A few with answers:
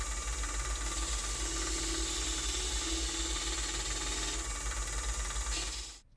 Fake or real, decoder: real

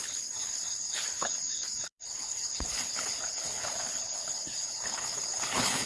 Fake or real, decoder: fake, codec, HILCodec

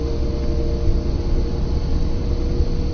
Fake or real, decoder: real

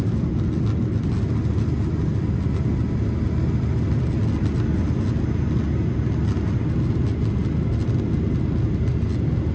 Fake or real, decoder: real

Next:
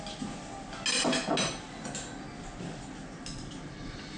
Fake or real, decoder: real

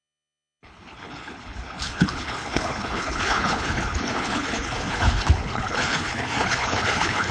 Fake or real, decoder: fake, codec, HILCodec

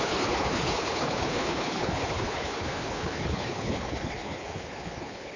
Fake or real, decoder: fake, codec, HILCodec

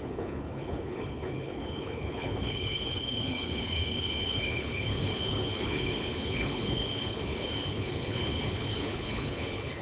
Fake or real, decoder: fake, codec, HILCodec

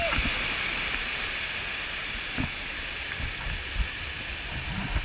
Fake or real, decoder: real